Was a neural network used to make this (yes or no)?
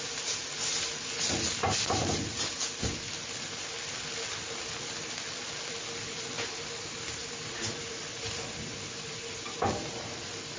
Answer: no